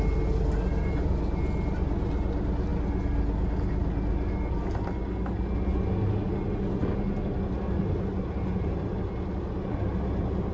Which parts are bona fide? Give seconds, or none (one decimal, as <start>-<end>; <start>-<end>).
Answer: 0.0-10.5